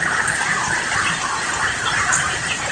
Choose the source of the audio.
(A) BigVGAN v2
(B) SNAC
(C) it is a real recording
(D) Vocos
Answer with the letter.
C